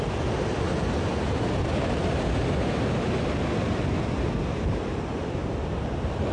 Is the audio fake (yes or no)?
no